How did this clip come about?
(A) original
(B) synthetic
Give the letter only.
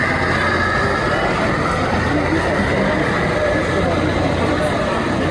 A